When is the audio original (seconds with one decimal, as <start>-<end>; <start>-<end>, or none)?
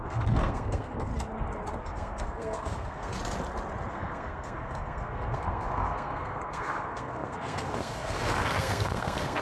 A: 1.1-1.8; 3.1-3.9